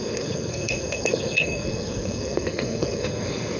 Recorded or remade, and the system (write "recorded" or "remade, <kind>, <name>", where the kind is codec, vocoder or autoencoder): remade, codec, SNAC